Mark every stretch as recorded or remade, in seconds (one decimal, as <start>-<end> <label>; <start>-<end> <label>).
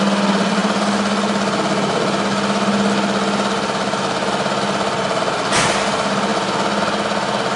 0.0-7.6 recorded